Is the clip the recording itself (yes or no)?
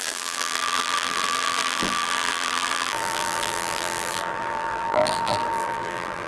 no